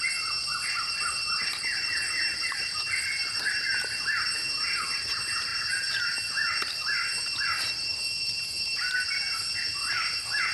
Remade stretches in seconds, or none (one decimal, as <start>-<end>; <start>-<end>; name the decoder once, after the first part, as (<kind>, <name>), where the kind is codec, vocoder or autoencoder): 0.5-5.1 (vocoder, BigVGAN v2)